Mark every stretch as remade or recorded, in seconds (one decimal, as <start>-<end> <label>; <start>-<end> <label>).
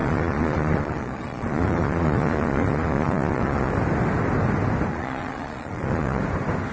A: 0.0-3.7 remade; 3.7-4.9 recorded; 4.9-6.2 remade; 6.2-6.7 recorded